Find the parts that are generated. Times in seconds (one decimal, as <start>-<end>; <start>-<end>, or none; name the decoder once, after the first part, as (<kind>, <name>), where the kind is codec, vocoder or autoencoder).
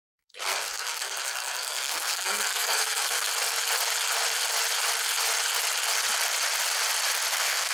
0.0-3.3 (codec, SNAC); 7.3-7.7